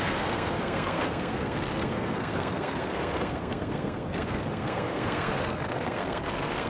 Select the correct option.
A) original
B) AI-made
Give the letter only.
B